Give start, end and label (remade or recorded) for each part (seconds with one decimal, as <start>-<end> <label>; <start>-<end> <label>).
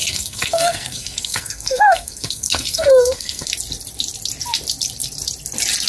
0.0-3.5 remade; 3.5-5.9 recorded